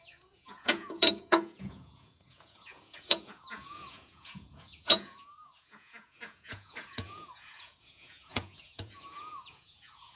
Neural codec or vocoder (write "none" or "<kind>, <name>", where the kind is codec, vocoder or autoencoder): vocoder, Vocos